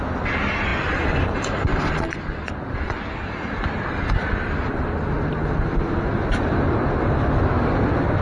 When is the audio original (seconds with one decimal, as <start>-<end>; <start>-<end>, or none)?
0.0-8.2